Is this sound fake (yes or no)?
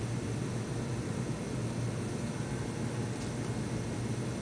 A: no